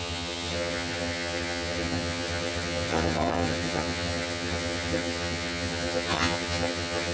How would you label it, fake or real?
fake